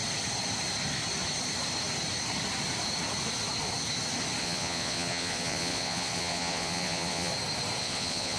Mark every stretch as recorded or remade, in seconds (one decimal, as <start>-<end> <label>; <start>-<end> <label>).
0.0-4.4 recorded; 4.4-7.3 remade; 7.3-7.8 recorded; 7.8-8.4 remade